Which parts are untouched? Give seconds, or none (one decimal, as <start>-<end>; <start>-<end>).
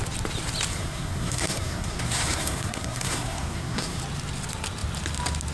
0.0-0.7; 4.0-5.5